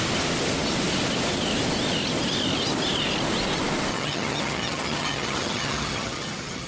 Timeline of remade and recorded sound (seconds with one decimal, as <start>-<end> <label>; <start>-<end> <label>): 0.0-3.9 recorded; 3.9-6.7 remade